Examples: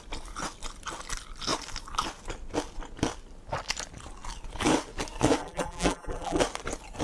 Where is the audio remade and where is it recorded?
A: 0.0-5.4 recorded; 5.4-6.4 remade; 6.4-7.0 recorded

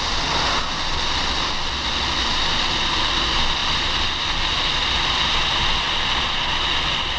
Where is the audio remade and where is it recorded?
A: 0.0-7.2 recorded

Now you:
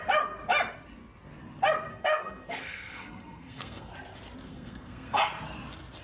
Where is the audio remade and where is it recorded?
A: 0.0-1.9 recorded; 1.9-3.9 remade; 3.9-4.5 recorded; 4.5-5.2 remade; 5.2-6.0 recorded